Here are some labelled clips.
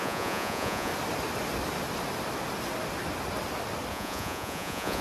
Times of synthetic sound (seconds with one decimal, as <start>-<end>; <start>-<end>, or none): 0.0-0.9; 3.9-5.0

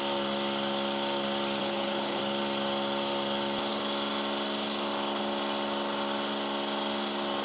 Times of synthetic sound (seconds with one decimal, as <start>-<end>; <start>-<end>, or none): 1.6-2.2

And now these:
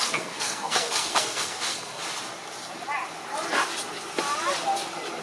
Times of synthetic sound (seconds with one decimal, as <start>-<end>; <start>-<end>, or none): 0.0-2.0